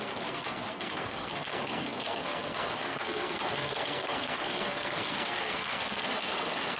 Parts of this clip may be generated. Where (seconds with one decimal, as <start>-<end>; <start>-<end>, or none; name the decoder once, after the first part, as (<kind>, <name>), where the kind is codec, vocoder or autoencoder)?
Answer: 0.0-6.8 (codec, SNAC)